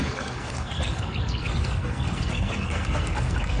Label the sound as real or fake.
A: fake